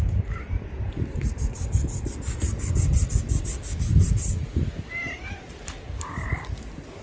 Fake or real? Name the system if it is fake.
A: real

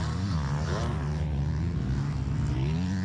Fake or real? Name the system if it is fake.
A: real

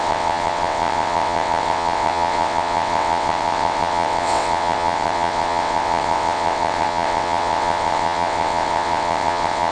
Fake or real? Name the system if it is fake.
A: fake, vocoder, WaveNeXt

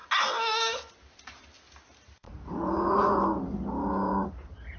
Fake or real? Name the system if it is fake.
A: real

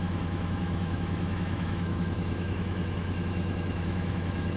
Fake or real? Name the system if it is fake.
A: fake, autoencoder, DAC-VAE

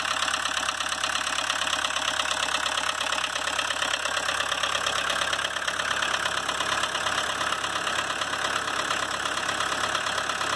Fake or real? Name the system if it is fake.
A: real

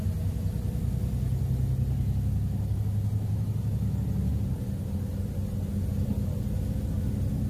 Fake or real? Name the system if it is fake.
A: real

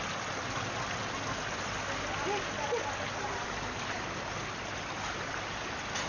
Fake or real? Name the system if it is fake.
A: real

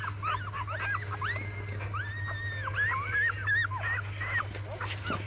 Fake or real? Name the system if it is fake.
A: real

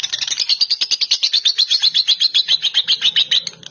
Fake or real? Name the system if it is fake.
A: real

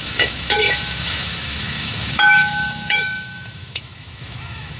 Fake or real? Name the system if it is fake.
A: fake, autoencoder, DAC-VAE